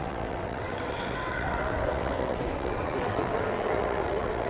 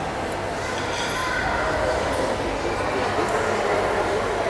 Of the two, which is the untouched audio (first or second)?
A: second